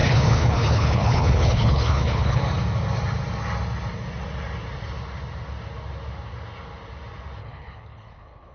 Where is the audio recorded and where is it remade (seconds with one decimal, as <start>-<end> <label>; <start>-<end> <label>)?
0.0-2.4 remade; 2.4-7.4 recorded; 7.4-8.5 remade